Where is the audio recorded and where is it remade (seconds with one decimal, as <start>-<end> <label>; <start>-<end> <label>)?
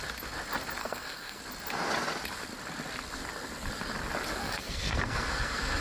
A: 0.0-0.8 recorded; 0.8-1.4 remade; 1.4-4.4 recorded; 4.4-5.8 remade